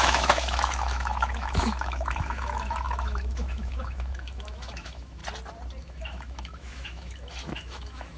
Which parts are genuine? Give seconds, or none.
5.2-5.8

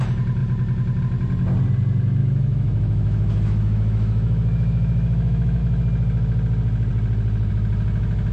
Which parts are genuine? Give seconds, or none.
0.0-2.2; 5.6-8.3

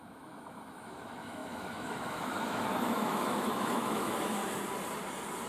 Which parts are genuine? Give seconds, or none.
4.4-5.5

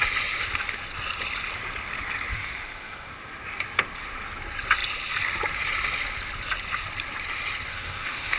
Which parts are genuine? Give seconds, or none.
0.0-2.3; 3.1-7.7

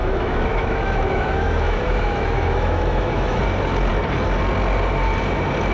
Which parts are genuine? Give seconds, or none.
3.4-5.7